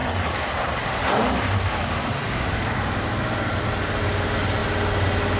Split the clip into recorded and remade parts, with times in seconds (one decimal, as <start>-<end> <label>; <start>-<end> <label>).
0.0-3.2 remade; 3.2-5.4 recorded